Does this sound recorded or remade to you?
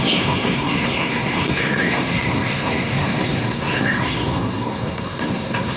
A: remade